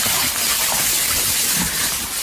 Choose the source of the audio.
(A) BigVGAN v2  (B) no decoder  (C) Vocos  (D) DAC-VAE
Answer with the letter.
B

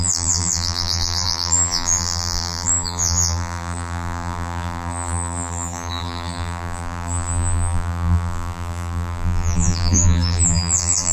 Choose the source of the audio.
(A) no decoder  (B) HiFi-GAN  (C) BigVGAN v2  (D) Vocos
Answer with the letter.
C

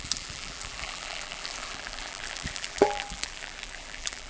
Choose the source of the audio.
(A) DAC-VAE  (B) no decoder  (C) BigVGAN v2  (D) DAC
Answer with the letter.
C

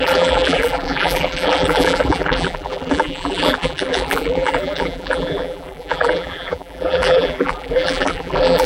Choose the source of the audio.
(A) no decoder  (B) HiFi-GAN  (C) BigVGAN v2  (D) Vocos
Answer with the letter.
C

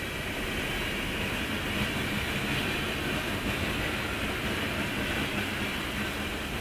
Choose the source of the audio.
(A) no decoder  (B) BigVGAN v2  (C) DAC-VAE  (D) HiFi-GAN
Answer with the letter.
A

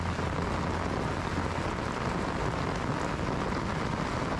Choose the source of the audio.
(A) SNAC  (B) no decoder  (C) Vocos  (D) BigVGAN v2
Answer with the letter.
B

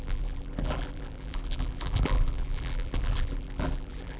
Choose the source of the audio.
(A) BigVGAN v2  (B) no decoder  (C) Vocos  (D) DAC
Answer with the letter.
A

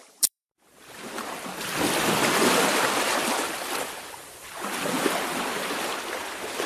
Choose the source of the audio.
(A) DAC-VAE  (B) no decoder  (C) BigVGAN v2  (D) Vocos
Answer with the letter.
C